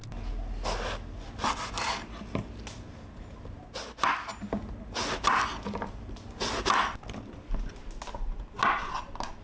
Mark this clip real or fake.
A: real